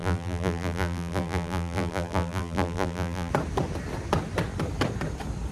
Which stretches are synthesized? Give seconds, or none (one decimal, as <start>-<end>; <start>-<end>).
0.0-3.3